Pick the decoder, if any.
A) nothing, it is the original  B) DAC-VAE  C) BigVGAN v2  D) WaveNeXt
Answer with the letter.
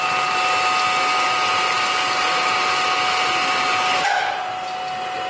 A